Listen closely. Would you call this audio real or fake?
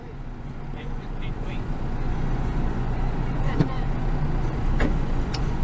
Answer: fake